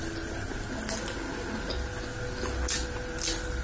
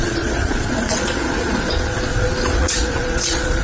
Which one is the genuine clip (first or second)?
first